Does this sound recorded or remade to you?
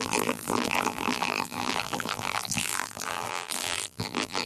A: remade